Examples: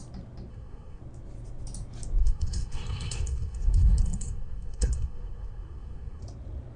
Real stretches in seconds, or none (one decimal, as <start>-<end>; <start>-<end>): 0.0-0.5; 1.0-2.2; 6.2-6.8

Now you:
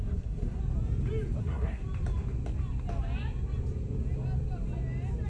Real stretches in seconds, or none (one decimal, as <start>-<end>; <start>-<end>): 0.6-1.4; 1.8-5.3

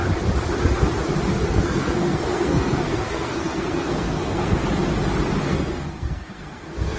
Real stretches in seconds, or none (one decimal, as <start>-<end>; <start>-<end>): 0.0-1.5; 4.6-5.4